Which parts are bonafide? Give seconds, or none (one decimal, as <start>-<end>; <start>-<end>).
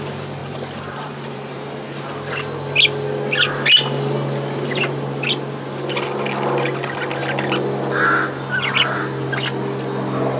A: 0.0-0.4; 2.0-10.4